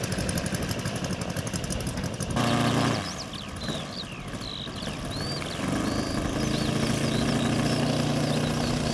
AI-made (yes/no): no